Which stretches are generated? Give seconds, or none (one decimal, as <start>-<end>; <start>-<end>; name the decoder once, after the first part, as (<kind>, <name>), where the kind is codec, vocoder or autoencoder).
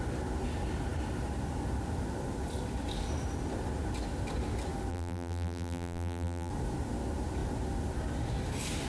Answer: 4.9-6.5 (vocoder, BigVGAN v2)